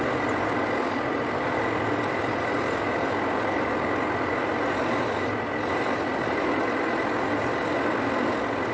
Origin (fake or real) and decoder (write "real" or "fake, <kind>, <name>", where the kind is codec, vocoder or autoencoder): real